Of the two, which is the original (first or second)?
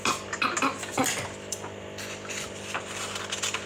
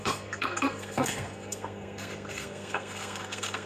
first